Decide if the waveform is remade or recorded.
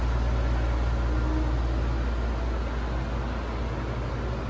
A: recorded